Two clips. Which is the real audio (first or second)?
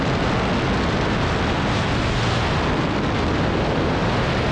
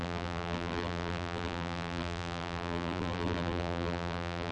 first